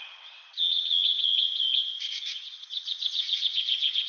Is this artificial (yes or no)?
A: yes